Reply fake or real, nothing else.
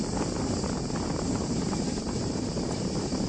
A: fake